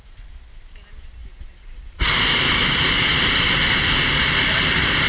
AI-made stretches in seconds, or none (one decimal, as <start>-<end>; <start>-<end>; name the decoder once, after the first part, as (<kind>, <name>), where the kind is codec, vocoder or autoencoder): none